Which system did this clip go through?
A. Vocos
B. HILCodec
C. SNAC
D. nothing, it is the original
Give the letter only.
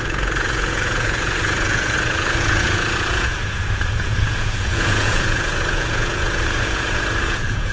A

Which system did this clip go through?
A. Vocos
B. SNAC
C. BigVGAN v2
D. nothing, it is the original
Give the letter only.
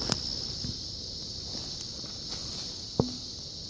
D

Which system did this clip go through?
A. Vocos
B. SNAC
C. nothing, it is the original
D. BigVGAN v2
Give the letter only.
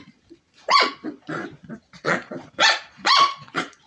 A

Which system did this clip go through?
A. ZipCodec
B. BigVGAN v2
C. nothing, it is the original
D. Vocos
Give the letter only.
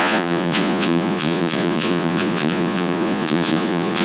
D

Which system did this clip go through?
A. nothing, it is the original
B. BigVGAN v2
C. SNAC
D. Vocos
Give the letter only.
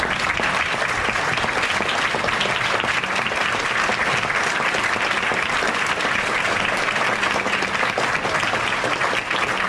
A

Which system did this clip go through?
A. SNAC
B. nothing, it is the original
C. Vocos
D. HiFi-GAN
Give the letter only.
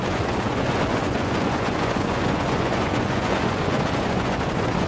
C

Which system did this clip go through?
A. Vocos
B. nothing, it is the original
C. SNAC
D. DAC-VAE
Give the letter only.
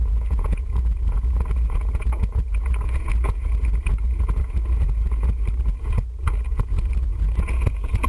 A